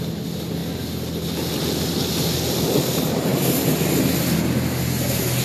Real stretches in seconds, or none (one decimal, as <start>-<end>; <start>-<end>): 0.0-5.4

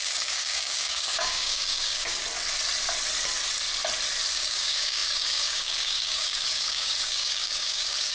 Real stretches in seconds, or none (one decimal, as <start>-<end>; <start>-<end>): 2.2-4.3

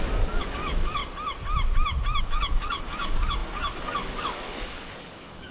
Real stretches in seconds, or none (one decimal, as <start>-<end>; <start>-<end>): 1.0-2.2

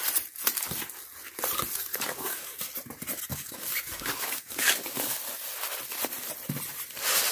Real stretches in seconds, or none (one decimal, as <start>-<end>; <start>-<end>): 0.0-1.9; 2.6-3.3; 5.2-7.3

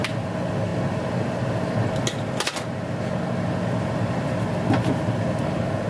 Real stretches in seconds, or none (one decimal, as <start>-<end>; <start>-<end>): 0.0-5.9

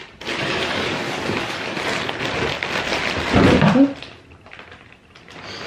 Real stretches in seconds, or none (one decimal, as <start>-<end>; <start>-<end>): 0.0-0.4; 1.8-5.7

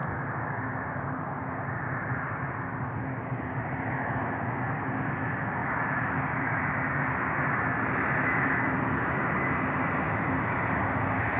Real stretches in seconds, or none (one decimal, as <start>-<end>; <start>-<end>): 0.8-11.4

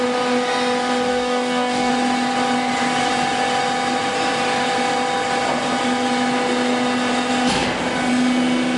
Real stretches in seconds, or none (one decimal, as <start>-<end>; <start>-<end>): 0.0-1.1; 1.9-8.8